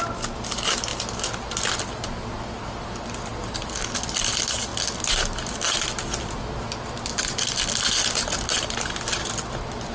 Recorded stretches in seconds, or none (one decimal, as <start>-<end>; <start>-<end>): 0.0-9.9